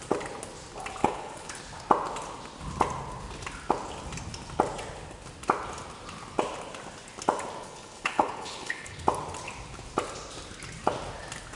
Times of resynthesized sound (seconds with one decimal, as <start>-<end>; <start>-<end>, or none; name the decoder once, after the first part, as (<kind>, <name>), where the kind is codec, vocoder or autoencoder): 1.0-1.5 (codec, HILCodec); 7.6-9.0